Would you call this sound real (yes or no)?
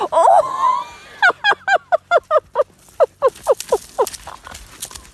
yes